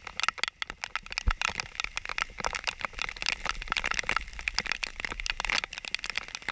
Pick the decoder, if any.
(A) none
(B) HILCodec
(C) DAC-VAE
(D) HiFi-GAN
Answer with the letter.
A